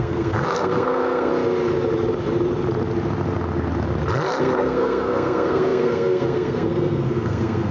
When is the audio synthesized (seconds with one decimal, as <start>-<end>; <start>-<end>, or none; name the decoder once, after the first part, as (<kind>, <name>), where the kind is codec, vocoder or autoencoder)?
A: 0.0-1.3 (codec, SNAC); 4.4-7.7